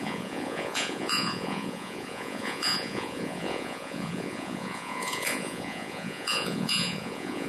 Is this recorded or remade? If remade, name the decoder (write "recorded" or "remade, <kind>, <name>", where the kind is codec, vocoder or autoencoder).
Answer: remade, vocoder, Vocos